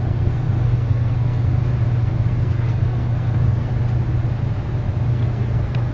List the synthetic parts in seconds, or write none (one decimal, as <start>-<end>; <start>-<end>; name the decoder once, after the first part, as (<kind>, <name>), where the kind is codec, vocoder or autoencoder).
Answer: 0.0-1.5 (codec, SNAC); 2.0-3.7; 5.1-5.9